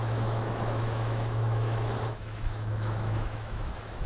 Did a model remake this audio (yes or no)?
yes